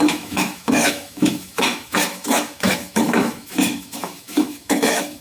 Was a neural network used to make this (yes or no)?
yes